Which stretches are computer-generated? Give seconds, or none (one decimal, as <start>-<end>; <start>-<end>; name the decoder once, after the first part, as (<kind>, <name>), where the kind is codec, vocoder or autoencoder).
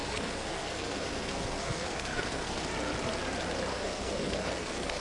0.0-2.7 (codec, SNAC); 3.7-5.0